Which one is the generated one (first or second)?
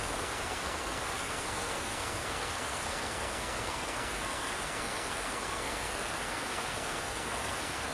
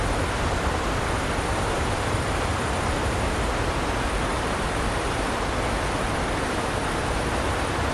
first